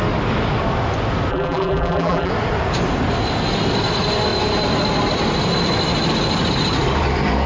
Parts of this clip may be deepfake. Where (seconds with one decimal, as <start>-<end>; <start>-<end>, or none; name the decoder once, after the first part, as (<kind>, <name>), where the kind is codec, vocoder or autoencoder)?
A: 1.3-2.3 (vocoder, BigVGAN v2)